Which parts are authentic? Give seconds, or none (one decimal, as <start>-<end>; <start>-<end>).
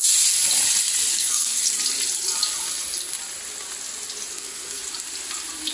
0.0-1.1; 1.6-4.3; 4.8-5.7